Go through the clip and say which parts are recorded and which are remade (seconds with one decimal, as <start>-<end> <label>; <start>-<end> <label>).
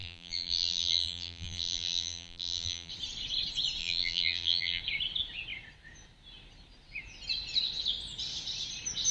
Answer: 0.0-2.9 remade; 2.9-3.8 recorded; 3.8-4.8 remade; 4.8-9.1 recorded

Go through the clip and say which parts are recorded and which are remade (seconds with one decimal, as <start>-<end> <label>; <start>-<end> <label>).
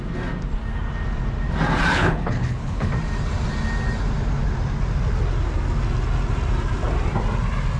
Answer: 0.0-1.9 recorded; 1.9-2.9 remade; 2.9-7.8 recorded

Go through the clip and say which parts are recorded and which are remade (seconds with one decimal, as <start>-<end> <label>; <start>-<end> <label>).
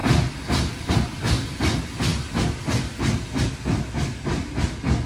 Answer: 0.0-0.9 remade; 0.9-5.1 recorded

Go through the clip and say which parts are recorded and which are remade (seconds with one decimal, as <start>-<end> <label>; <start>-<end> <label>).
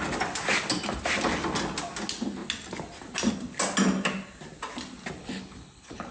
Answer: 0.0-5.2 recorded; 5.2-6.1 remade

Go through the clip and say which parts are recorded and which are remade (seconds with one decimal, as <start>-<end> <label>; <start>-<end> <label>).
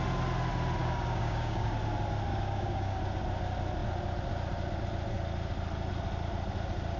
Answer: 0.0-0.8 recorded; 0.8-1.7 remade; 1.7-2.3 recorded; 2.3-3.0 remade; 3.0-7.0 recorded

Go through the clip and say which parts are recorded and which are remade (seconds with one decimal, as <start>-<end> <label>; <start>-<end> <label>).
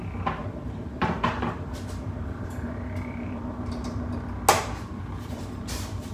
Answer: 0.0-0.4 recorded; 0.4-4.1 remade; 4.1-6.1 recorded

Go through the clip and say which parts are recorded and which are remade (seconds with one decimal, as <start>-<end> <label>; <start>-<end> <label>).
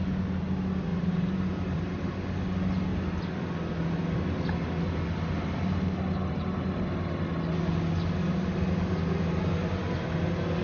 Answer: 0.0-0.9 recorded; 0.9-2.0 remade; 2.0-10.6 recorded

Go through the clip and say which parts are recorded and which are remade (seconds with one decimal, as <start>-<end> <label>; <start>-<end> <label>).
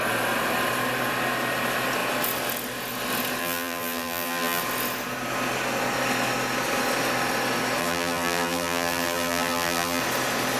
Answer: 0.0-3.4 recorded; 3.4-4.6 remade; 4.6-7.8 recorded; 7.8-10.0 remade; 10.0-10.6 recorded